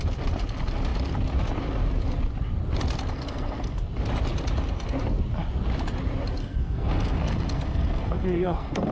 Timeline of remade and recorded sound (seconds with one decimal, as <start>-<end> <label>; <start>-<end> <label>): 0.0-3.1 recorded; 3.1-3.9 remade; 3.9-6.4 recorded; 6.4-8.9 remade